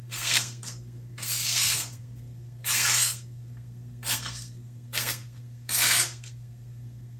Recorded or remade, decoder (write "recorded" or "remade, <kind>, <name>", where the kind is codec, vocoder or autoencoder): remade, codec, SNAC